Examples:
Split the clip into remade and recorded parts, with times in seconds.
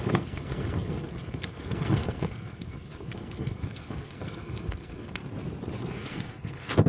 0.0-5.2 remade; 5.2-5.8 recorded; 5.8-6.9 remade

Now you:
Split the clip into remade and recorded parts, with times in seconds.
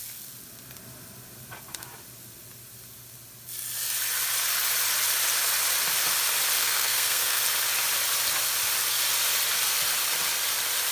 0.0-6.6 recorded; 6.6-7.4 remade; 7.4-10.9 recorded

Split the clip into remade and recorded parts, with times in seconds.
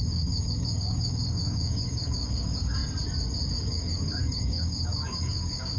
0.0-2.8 remade; 2.8-3.5 recorded; 3.5-5.8 remade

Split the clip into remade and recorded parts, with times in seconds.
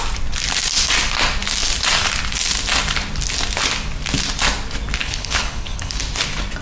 0.0-5.0 recorded; 5.0-6.0 remade; 6.0-6.6 recorded